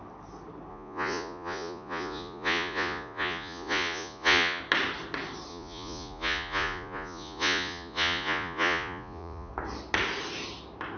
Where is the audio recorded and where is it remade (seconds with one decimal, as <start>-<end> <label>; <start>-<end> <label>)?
0.0-0.7 recorded; 0.7-4.6 remade; 4.6-5.5 recorded; 5.5-9.5 remade; 9.5-11.0 recorded